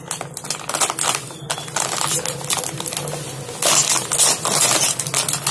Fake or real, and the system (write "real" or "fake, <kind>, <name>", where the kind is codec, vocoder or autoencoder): real